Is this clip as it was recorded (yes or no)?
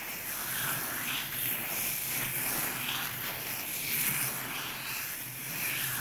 no